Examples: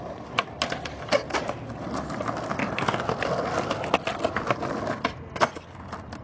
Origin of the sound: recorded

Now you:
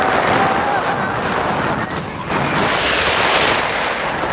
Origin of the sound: recorded